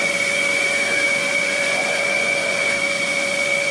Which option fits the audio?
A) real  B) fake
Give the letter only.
B